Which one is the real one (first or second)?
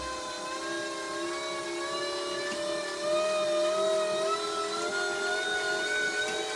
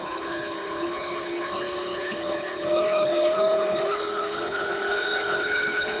first